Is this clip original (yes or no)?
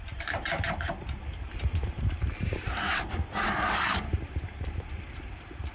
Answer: no